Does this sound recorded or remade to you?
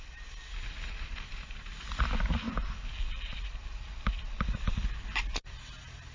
recorded